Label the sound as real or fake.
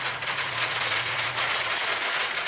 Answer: fake